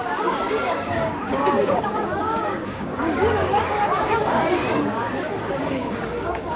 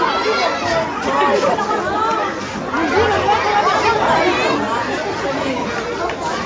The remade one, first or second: first